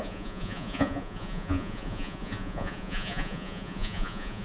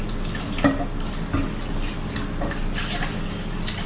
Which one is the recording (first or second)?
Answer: second